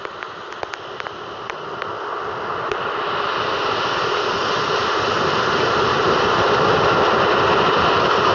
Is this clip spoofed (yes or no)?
no